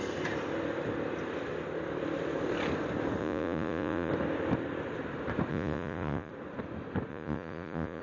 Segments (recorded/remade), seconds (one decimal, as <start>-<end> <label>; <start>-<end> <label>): 0.0-3.2 recorded; 3.2-4.1 remade; 4.1-5.5 recorded; 5.5-6.3 remade; 6.3-7.1 recorded; 7.1-8.0 remade